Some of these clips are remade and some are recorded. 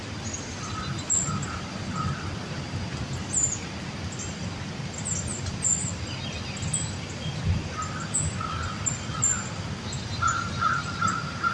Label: recorded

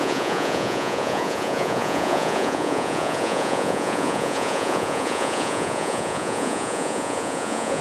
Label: remade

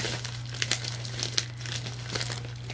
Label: recorded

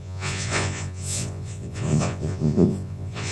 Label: remade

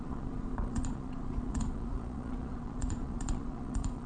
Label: remade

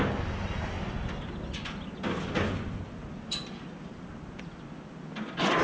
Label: recorded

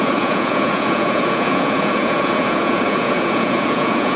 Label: remade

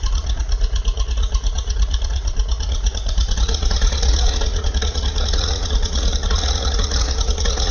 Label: remade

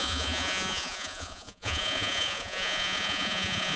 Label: remade